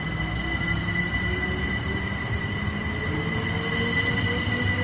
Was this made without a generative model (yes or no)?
yes